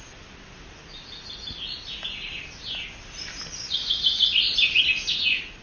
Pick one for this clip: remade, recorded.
recorded